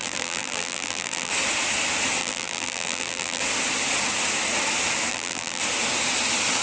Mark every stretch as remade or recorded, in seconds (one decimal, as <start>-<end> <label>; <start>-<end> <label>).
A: 0.0-1.3 remade; 1.3-2.2 recorded; 2.2-3.4 remade; 3.4-5.1 recorded; 5.1-5.6 remade; 5.6-6.6 recorded